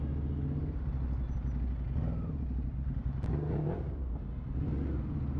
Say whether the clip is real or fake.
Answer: real